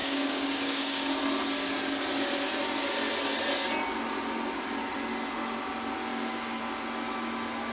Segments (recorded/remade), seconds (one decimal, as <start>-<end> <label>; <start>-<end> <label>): 0.0-1.2 remade; 1.2-6.1 recorded; 6.1-6.6 remade; 6.6-7.7 recorded